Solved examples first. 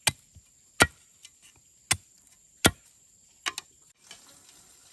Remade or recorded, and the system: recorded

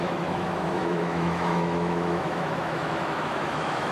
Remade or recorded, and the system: remade, autoencoder, DAC-VAE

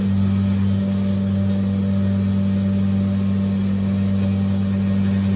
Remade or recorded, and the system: recorded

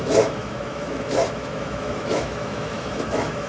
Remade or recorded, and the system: remade, autoencoder, DAC-VAE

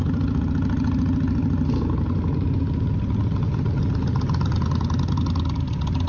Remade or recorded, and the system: recorded